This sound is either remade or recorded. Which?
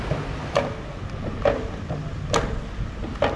recorded